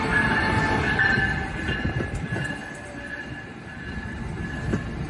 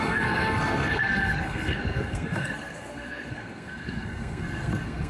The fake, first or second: second